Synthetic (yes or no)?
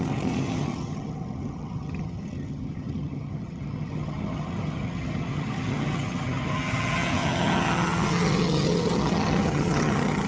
yes